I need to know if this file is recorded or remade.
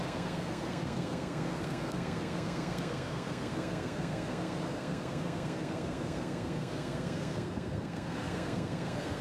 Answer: remade